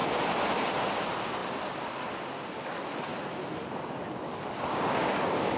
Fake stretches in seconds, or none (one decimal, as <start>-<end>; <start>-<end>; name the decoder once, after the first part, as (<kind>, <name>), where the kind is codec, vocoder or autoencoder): 4.7-5.6 (codec, DAC)